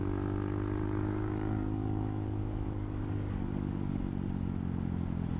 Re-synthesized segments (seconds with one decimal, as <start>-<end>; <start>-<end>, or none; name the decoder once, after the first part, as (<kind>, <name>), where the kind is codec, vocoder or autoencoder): 0.8-4.0 (codec, DAC)